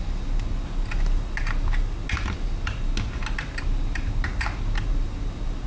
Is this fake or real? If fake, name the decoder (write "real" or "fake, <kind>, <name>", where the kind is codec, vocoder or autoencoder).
real